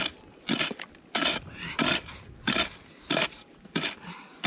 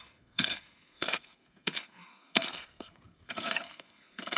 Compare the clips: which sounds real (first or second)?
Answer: first